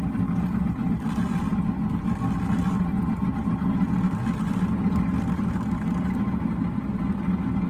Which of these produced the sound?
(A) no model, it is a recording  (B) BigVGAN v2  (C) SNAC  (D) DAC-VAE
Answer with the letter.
A